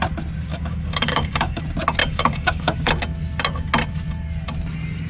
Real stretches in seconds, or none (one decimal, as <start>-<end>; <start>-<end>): 0.0-0.5; 1.6-2.0; 2.9-5.1